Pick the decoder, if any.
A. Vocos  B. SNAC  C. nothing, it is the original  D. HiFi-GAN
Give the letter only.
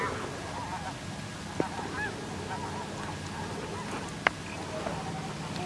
C